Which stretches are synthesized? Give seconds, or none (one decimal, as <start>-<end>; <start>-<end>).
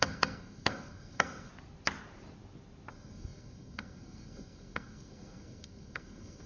0.0-1.5; 2.9-6.5